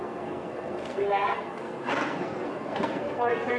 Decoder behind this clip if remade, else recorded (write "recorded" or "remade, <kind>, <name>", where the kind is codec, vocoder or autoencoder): remade, codec, SNAC